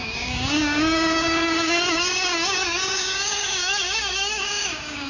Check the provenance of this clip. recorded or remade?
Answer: remade